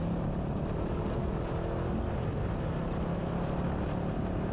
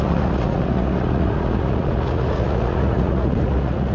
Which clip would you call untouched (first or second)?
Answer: first